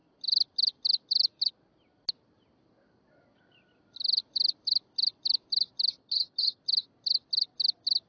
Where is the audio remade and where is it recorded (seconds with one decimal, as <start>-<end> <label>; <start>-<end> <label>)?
0.0-6.0 recorded; 6.0-6.6 remade; 6.6-8.1 recorded